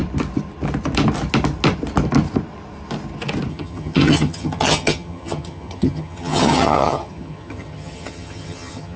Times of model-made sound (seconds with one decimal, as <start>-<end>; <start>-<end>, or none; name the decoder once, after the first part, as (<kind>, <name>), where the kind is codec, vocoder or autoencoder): 3.5-9.0 (vocoder, HiFi-GAN)